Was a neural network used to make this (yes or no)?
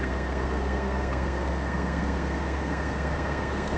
yes